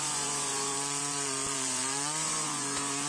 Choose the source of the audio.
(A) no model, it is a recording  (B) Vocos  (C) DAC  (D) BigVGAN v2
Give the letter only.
B